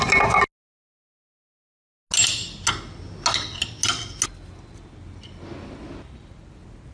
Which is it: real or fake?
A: real